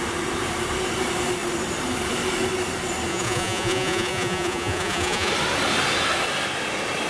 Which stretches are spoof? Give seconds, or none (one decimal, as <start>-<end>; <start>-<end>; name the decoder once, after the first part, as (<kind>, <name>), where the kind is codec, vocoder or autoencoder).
3.1-5.3 (vocoder, Vocos)